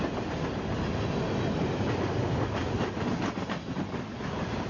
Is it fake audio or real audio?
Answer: real